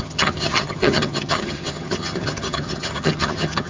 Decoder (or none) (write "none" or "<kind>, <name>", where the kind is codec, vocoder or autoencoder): vocoder, HiFi-GAN